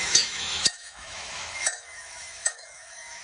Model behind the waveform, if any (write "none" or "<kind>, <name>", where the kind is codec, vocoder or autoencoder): autoencoder, DAC-VAE